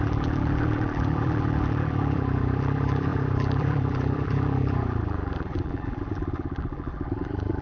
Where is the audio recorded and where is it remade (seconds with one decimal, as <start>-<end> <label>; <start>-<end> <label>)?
0.0-7.6 remade